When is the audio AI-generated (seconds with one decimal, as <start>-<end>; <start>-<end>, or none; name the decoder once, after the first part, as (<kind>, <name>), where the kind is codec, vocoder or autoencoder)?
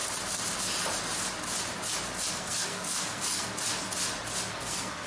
2.3-3.5 (codec, SNAC); 4.5-5.1